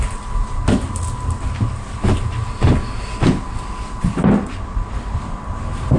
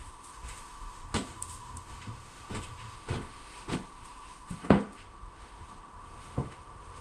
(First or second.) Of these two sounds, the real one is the first